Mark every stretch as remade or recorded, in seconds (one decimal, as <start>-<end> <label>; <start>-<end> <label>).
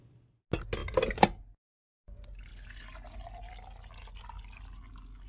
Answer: 0.0-5.3 recorded